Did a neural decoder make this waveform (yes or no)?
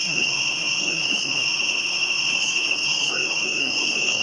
yes